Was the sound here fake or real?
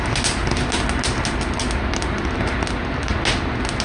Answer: real